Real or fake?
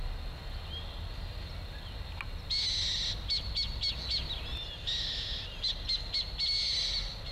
real